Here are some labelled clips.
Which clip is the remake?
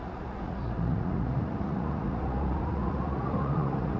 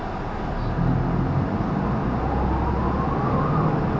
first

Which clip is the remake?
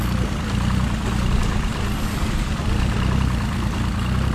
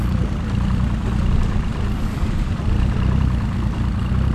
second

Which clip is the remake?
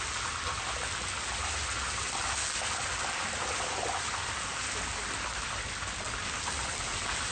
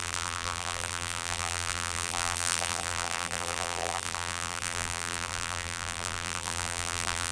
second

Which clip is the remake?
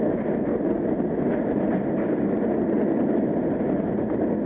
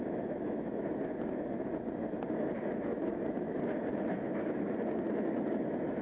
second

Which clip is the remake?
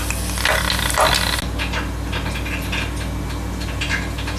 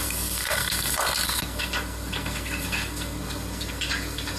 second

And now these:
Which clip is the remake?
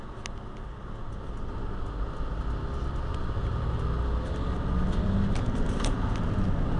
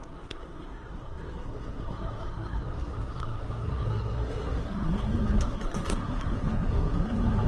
second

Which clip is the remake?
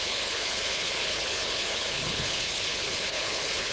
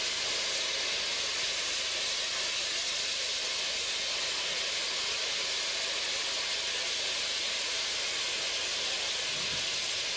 first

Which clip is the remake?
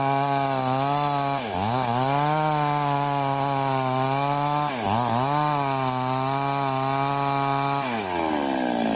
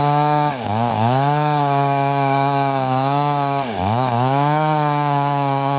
second